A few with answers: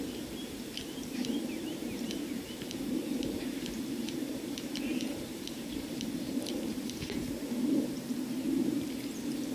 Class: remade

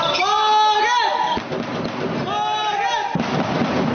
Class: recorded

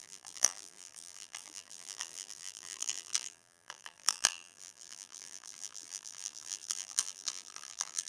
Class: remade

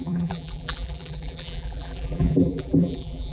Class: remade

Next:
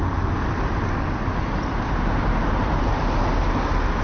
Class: recorded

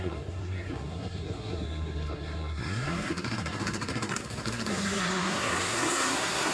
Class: remade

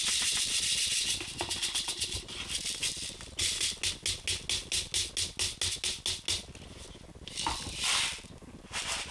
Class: recorded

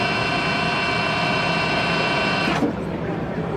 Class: recorded